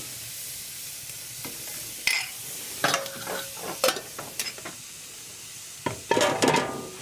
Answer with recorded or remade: recorded